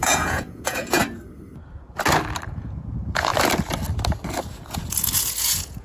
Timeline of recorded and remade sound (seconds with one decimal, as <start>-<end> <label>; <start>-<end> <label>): 0.0-1.0 remade; 1.0-2.5 recorded; 2.5-3.3 remade; 3.3-4.5 recorded; 4.5-5.8 remade